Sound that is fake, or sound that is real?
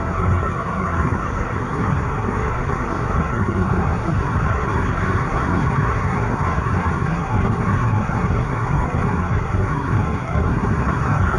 fake